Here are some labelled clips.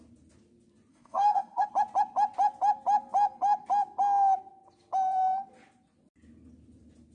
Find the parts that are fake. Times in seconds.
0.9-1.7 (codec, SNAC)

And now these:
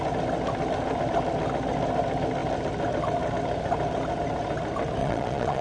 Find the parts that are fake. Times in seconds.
5.0-5.6 (vocoder, Vocos)

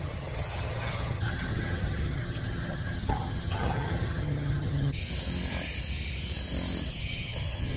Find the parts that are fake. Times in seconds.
0.0-5.0 (vocoder, HiFi-GAN); 6.9-7.8

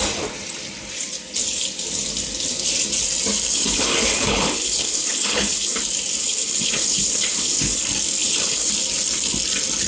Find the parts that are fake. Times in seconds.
3.5-5.8 (codec, HILCodec); 6.2-7.8; 8.2-8.7

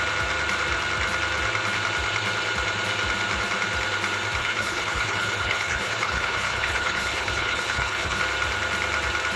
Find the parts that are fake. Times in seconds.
4.4-8.2 (codec, HILCodec)